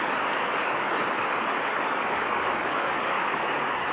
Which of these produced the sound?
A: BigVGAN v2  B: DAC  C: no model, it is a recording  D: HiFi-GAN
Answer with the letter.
B